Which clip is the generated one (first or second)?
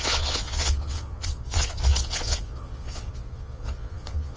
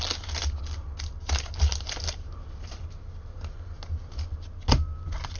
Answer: first